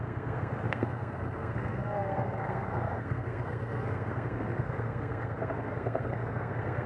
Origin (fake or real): fake